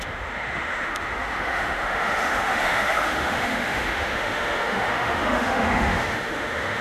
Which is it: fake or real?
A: fake